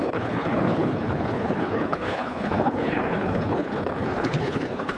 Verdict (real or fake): fake